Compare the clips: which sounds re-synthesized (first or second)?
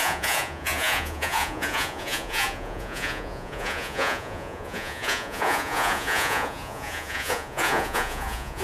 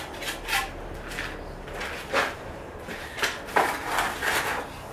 first